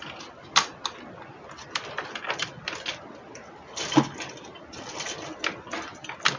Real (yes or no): yes